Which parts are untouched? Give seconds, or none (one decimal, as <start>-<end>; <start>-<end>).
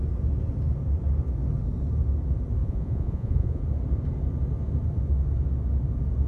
0.0-2.6; 3.6-6.3